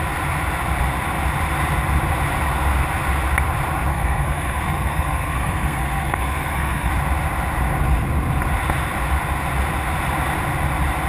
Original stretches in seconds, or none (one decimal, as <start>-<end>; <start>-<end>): 0.0-3.9; 6.9-11.1